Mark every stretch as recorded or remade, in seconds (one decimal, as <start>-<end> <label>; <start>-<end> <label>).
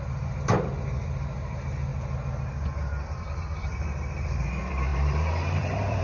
0.0-1.9 remade; 1.9-3.6 recorded; 3.6-6.0 remade